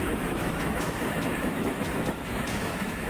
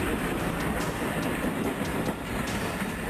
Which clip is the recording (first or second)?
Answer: second